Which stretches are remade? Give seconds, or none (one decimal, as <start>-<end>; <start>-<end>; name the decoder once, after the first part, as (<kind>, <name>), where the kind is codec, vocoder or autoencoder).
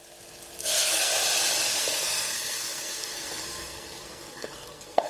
0.6-1.1 (codec, SNAC); 1.7-5.1